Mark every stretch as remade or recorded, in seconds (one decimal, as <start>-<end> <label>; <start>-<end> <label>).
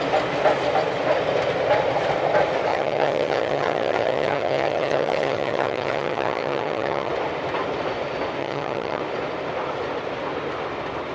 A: 0.0-2.7 recorded; 2.7-7.1 remade; 7.1-8.4 recorded; 8.4-9.0 remade; 9.0-11.1 recorded